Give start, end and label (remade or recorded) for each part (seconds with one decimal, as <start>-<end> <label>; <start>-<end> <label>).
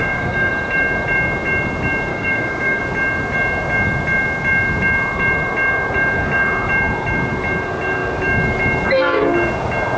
0.0-0.5 remade; 0.5-2.1 recorded; 2.1-2.8 remade; 2.8-10.0 recorded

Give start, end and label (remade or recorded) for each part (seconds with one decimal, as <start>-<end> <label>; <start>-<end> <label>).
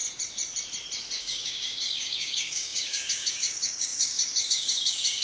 0.0-1.2 recorded; 1.2-5.2 remade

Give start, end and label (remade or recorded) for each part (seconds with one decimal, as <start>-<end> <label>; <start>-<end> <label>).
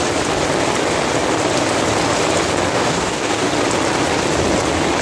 0.0-2.7 recorded; 2.7-3.5 remade; 3.5-5.0 recorded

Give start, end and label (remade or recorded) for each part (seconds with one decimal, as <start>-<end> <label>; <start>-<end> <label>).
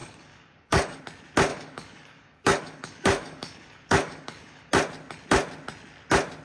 0.0-1.0 remade; 1.0-1.5 recorded; 1.5-4.7 remade; 4.7-6.4 recorded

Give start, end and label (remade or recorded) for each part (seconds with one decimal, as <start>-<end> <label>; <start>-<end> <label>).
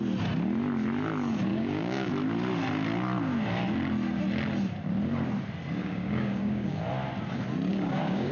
0.0-1.5 recorded; 1.5-2.1 remade; 2.1-5.8 recorded; 5.8-6.8 remade; 6.8-7.7 recorded; 7.7-8.3 remade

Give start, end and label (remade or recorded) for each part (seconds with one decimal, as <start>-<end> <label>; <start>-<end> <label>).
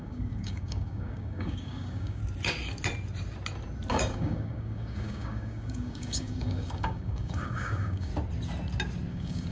0.0-2.2 remade; 2.2-3.9 recorded; 3.9-8.1 remade; 8.1-9.1 recorded; 9.1-9.5 remade